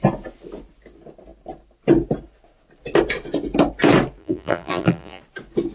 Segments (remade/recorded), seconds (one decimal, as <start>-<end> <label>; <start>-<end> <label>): 0.0-4.2 recorded; 4.2-5.2 remade; 5.2-5.7 recorded